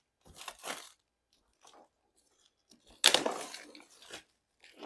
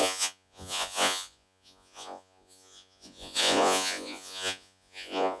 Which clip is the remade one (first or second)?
second